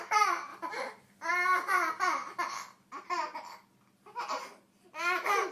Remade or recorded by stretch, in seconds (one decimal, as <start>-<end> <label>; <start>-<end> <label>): 0.0-0.5 recorded; 0.5-1.3 remade; 1.3-2.2 recorded; 2.2-4.5 remade; 4.5-5.5 recorded